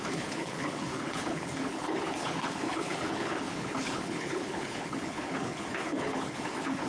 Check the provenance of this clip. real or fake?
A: fake